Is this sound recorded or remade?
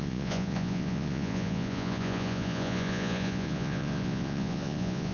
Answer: remade